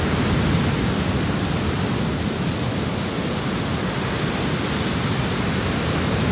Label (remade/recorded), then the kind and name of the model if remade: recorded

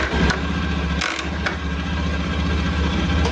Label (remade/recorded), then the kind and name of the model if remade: recorded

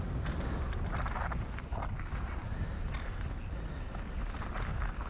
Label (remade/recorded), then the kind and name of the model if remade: recorded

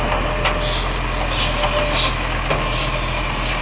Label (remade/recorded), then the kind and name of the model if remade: recorded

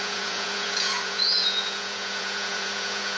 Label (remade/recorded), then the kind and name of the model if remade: remade, vocoder, Vocos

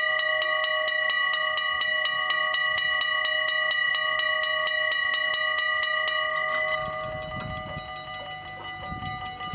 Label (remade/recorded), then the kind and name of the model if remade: recorded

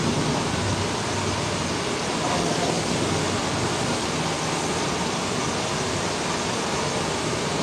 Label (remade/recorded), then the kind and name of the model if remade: recorded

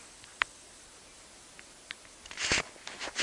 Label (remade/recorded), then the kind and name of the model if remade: recorded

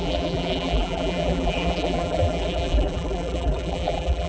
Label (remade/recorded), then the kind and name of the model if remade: remade, vocoder, BigVGAN v2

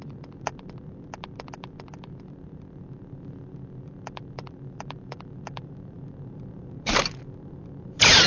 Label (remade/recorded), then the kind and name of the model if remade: remade, vocoder, BigVGAN v2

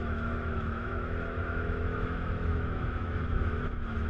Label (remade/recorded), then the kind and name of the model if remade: remade, autoencoder, DAC-VAE